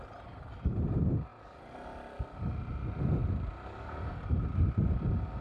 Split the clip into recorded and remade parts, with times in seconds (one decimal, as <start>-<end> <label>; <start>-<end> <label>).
0.0-5.4 recorded